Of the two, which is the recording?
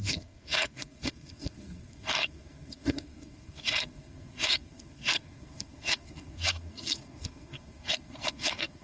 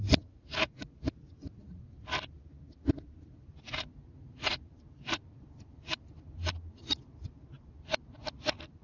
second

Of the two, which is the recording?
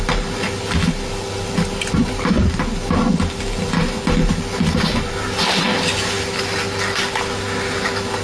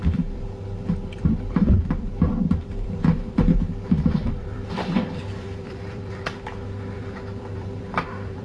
first